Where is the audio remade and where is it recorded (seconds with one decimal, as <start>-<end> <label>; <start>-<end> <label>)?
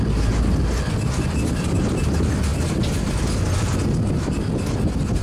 0.0-5.2 recorded